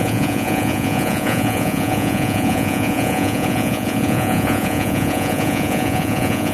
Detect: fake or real fake